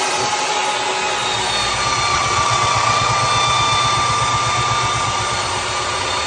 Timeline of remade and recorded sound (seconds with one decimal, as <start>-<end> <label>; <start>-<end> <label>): 0.0-2.1 recorded; 2.1-3.1 remade; 3.1-6.3 recorded